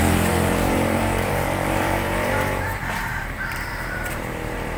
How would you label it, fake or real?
fake